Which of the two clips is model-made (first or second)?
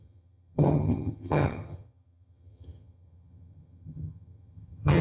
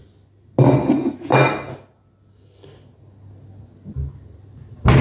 first